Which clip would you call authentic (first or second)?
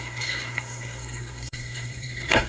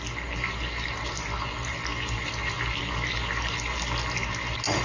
second